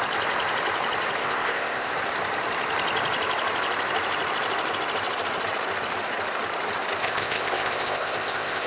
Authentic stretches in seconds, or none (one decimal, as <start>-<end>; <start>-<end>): 0.0-1.2; 1.9-7.0